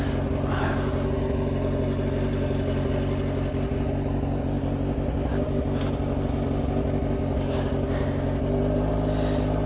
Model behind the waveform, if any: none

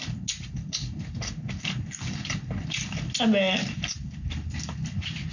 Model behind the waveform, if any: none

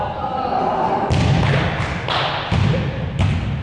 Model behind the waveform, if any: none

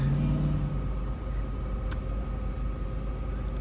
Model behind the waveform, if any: none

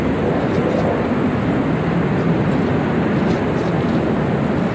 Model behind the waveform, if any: none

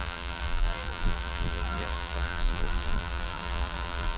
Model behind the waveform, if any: vocoder, BigVGAN v2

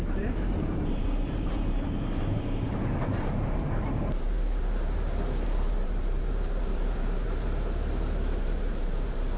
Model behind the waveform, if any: vocoder, BigVGAN v2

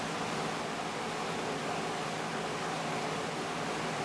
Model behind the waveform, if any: none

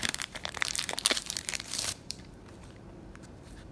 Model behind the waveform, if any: vocoder, BigVGAN v2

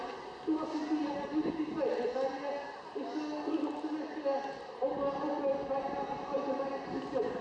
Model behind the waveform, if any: none